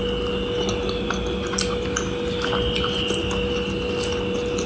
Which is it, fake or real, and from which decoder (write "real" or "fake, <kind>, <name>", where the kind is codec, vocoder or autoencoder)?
real